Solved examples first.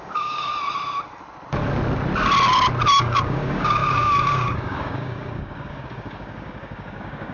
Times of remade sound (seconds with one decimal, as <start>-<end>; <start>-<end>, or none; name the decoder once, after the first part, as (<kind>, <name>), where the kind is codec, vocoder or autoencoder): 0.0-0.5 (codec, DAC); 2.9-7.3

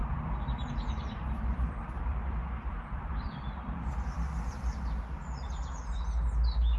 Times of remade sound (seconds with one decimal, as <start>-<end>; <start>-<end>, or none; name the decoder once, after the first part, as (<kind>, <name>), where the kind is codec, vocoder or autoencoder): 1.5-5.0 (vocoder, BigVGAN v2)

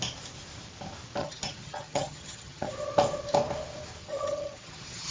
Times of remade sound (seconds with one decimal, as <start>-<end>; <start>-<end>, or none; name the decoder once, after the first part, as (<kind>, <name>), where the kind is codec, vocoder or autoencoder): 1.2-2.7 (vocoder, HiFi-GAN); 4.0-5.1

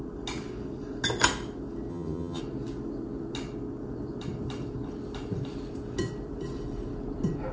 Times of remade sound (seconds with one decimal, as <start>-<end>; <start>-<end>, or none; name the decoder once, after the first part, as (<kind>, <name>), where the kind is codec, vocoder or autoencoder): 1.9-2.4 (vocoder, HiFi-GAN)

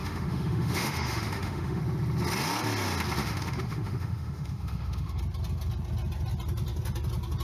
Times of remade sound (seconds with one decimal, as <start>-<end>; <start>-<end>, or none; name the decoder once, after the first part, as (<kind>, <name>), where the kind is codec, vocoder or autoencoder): 0.0-1.8 (autoencoder, DAC-VAE); 3.2-5.2

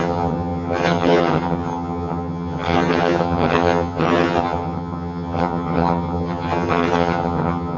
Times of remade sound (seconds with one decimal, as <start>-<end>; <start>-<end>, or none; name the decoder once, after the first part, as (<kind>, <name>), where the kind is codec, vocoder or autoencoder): 0.0-7.8 (vocoder, HiFi-GAN)

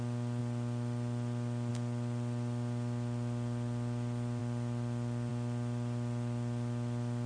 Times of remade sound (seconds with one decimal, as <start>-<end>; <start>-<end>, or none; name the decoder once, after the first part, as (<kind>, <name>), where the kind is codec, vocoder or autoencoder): none

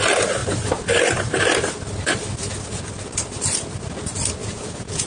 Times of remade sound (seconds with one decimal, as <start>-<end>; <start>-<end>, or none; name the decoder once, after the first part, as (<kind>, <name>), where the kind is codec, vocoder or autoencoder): 4.4-5.1 (vocoder, Vocos)